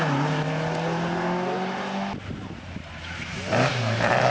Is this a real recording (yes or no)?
yes